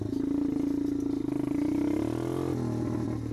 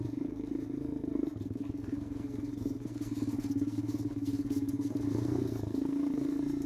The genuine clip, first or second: first